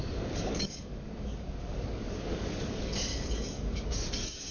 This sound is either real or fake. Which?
fake